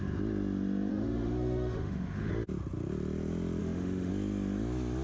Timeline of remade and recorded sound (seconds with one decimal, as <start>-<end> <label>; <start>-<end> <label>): 0.0-0.9 recorded; 0.9-2.3 remade; 2.3-3.6 recorded; 3.6-4.1 remade; 4.1-5.0 recorded